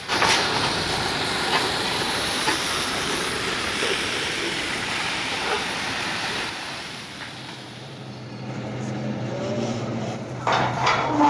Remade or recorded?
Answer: remade